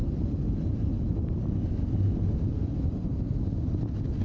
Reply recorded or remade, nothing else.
recorded